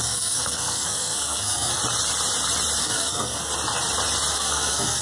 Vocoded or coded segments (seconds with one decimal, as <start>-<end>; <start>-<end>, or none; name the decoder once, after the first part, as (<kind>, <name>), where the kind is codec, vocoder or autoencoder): 0.0-1.8 (codec, SNAC); 2.8-3.5; 4.3-5.0